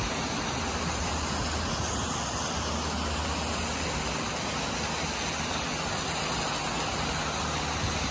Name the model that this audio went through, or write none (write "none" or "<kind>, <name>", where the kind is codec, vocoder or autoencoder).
none